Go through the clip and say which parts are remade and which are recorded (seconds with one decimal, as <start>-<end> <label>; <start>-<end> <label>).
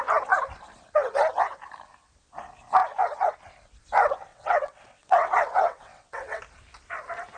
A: 0.0-4.3 recorded; 4.3-6.4 remade; 6.4-7.4 recorded